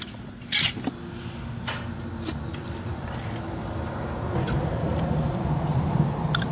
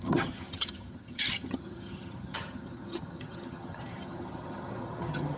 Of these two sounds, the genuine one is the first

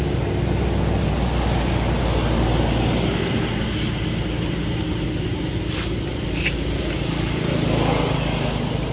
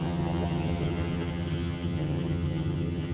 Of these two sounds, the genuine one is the first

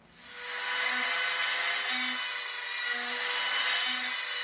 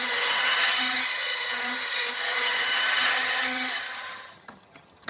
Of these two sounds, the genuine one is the first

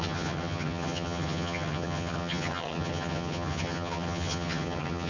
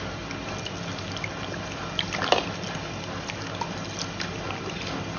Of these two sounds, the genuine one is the second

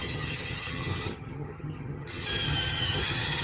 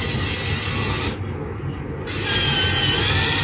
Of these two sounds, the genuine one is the second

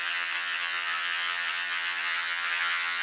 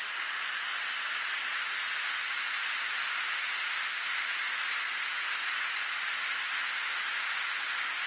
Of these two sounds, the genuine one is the second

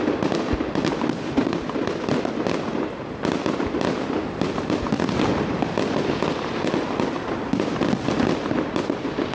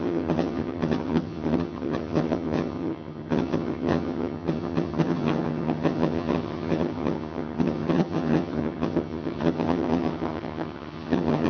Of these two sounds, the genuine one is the first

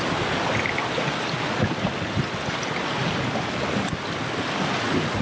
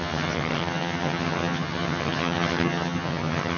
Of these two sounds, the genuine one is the first